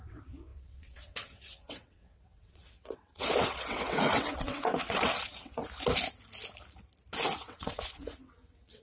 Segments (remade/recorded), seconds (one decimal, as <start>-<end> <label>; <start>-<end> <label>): 0.0-5.6 remade; 5.6-7.4 recorded; 7.4-8.8 remade